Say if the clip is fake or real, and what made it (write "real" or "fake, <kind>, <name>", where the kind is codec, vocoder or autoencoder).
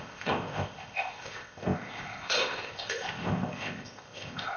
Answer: fake, codec, ZipCodec